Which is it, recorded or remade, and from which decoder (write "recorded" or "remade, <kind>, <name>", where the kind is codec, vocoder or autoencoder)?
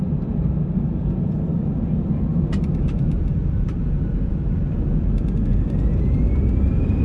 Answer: remade, vocoder, BigVGAN v2